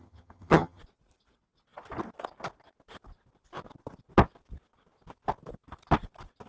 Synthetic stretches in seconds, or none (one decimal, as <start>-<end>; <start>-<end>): 0.0-0.8